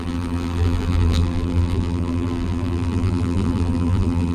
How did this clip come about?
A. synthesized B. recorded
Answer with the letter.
A